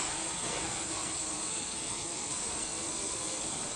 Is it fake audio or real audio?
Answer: fake